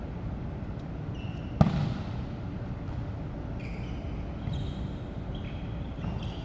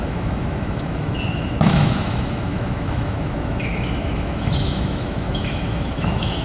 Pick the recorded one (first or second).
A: first